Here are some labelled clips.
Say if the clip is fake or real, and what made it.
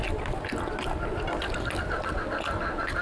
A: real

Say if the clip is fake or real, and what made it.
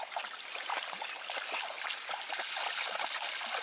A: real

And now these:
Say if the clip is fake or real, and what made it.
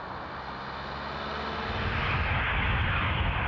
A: real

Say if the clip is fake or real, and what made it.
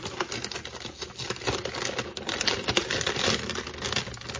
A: real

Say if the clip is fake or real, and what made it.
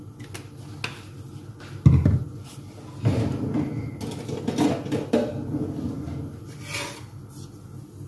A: real